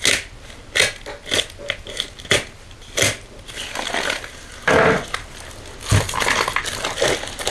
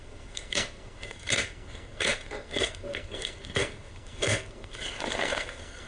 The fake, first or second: second